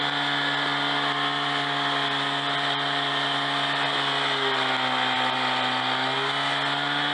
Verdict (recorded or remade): recorded